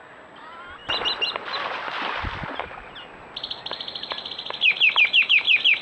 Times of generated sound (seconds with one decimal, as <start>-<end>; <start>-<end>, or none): none